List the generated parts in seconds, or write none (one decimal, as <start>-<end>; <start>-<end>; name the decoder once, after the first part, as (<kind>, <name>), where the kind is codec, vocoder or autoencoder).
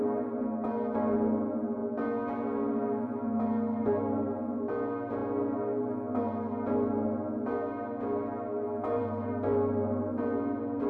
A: none